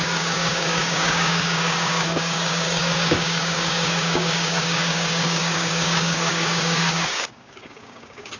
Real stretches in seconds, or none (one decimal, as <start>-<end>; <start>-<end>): none